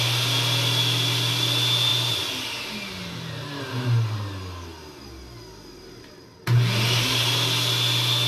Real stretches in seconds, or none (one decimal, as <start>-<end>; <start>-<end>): 0.0-8.3